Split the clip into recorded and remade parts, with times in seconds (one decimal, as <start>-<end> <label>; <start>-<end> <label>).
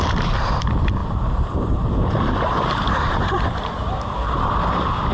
0.0-1.0 recorded; 1.0-4.1 remade; 4.1-5.1 recorded